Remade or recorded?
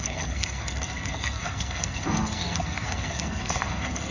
remade